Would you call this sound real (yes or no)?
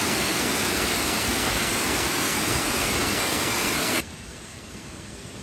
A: no